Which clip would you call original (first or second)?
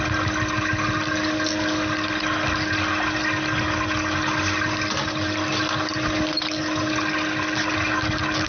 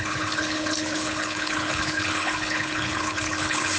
first